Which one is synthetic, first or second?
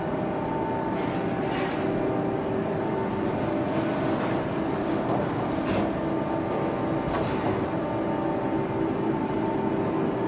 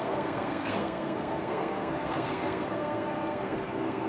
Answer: second